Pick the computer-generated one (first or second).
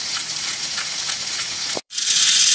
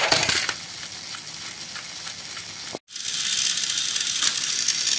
first